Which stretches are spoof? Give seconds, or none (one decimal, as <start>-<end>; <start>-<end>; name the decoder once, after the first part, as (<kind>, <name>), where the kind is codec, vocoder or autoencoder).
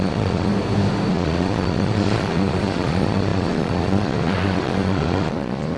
0.0-0.5 (vocoder, Vocos); 1.1-5.8